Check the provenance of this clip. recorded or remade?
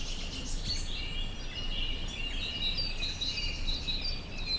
recorded